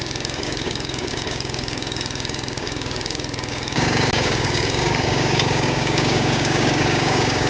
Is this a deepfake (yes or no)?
yes